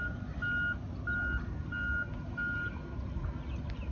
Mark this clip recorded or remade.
recorded